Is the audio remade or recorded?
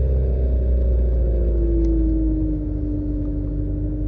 recorded